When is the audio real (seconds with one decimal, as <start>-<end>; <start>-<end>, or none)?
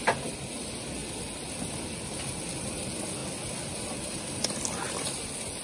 0.0-5.6